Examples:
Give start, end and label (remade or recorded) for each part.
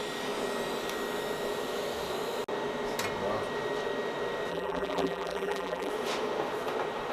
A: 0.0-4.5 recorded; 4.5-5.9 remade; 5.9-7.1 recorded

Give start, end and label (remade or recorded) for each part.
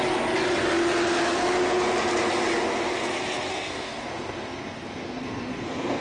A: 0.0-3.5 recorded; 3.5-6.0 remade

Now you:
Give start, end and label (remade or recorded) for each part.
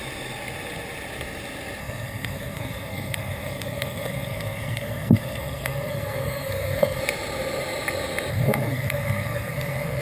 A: 0.0-1.8 recorded; 1.8-7.0 remade; 7.0-8.3 recorded; 8.3-10.0 remade